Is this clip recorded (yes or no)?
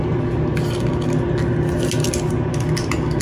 yes